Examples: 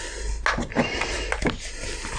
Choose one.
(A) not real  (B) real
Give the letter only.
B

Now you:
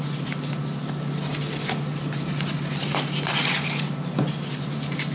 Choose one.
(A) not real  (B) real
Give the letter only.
B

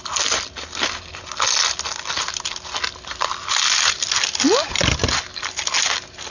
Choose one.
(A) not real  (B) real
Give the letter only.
B